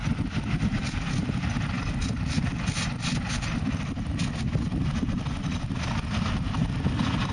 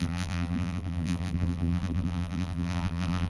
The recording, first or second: first